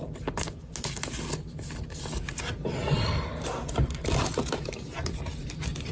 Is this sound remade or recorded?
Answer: recorded